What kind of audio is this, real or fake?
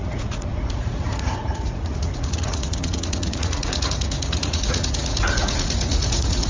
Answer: fake